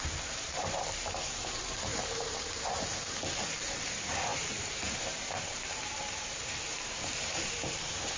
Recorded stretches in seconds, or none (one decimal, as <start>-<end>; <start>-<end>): none